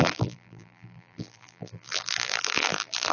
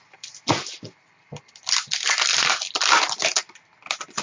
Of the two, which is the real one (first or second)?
second